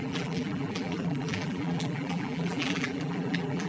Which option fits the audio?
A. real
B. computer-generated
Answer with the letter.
B